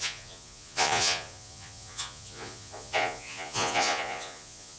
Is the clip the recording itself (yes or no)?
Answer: no